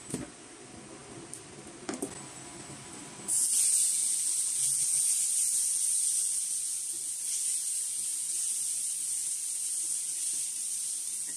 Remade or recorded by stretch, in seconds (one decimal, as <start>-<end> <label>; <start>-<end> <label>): 0.0-11.4 recorded

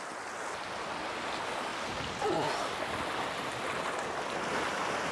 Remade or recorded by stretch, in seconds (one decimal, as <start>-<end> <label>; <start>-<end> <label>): 0.0-5.1 recorded

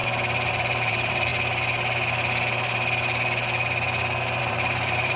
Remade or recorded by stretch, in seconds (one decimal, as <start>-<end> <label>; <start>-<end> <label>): 0.0-0.5 recorded; 0.5-1.3 remade; 1.3-4.4 recorded; 4.4-5.2 remade

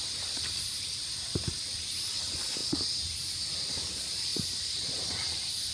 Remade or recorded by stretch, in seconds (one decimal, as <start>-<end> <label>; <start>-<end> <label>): 0.0-2.6 remade; 2.6-3.7 recorded; 3.7-5.7 remade

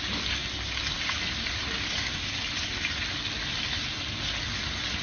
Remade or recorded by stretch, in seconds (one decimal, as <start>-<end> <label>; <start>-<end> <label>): 0.0-5.0 recorded

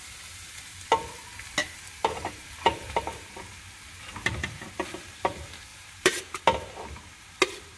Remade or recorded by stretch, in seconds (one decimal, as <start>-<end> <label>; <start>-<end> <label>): 0.0-1.6 recorded; 1.6-3.3 remade; 3.3-5.7 recorded; 5.7-6.4 remade; 6.4-7.8 recorded

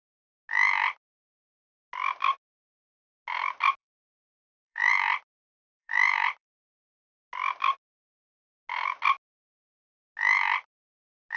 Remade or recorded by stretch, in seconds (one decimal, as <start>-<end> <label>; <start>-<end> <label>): 0.0-3.8 recorded; 3.8-4.9 remade; 4.9-5.4 recorded; 5.4-6.5 remade; 6.5-11.4 recorded

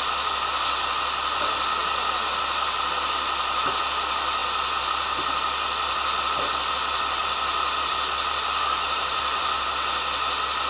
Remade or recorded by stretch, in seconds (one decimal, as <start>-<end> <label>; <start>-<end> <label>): 0.0-7.2 recorded; 7.2-9.7 remade; 9.7-10.7 recorded